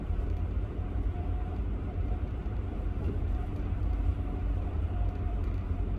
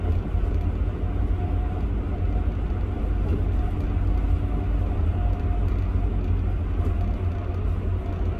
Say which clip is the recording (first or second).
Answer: second